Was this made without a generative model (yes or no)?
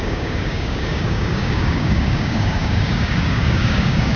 no